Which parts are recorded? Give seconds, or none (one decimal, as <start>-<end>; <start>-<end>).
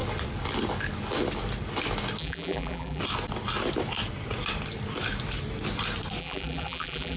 0.0-2.2; 3.0-6.2